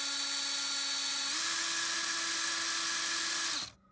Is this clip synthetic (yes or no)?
no